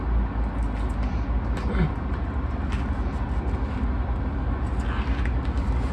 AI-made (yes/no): no